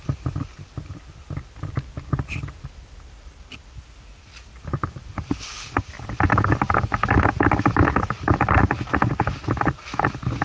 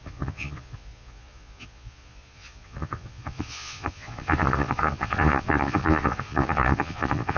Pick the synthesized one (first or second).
second